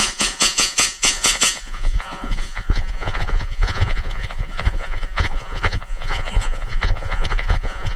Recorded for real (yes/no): no